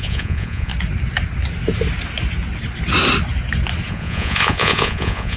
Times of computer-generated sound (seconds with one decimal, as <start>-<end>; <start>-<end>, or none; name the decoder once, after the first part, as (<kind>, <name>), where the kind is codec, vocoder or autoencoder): 0.0-0.7 (vocoder, Vocos); 3.9-5.4